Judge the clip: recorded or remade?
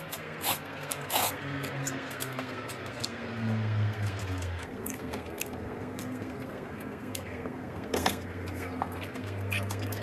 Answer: remade